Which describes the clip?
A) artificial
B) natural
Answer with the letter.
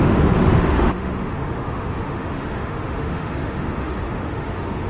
A